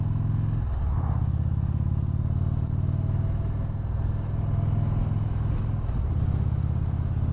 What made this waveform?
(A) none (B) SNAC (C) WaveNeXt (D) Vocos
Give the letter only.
A